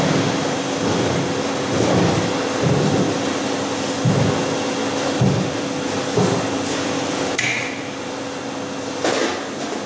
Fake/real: real